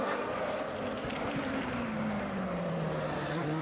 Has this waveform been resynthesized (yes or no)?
no